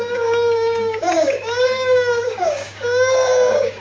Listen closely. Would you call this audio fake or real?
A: fake